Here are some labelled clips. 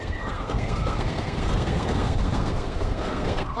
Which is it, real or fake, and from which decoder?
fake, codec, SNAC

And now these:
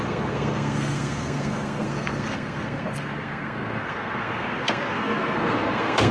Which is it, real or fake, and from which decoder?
fake, codec, SNAC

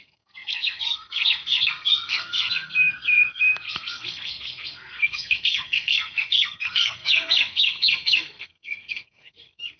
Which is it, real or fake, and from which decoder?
fake, codec, SNAC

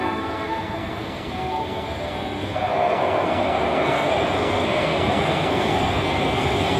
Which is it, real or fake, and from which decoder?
fake, codec, SNAC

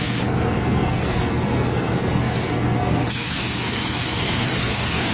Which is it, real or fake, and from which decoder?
fake, codec, SNAC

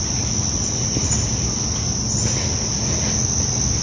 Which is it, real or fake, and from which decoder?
real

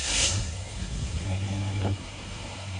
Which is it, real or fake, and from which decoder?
fake, codec, SNAC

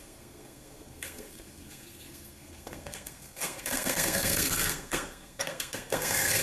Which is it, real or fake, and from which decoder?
fake, codec, SNAC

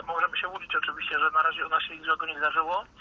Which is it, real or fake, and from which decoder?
real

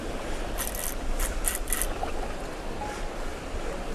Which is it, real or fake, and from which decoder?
real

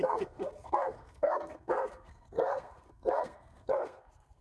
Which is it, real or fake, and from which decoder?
fake, codec, SNAC